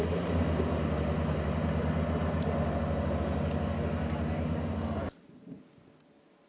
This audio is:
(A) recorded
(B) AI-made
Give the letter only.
A